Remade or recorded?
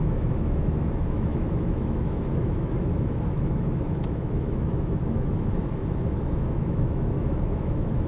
remade